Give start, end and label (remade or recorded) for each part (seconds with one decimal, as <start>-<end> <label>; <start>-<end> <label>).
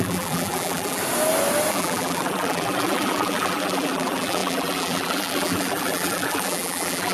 0.0-1.0 remade; 1.0-1.7 recorded; 1.7-7.1 remade